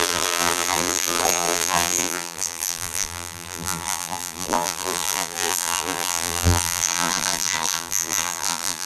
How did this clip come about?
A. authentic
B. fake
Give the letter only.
B